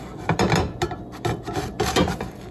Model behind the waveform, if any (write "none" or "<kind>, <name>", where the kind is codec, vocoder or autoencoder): none